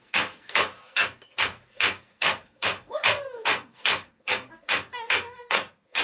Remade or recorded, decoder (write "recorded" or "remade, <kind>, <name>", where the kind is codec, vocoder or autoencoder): remade, codec, SNAC